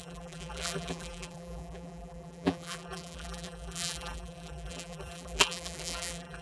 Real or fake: fake